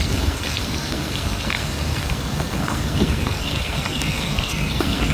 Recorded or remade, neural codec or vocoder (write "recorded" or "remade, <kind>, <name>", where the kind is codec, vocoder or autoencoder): remade, codec, SNAC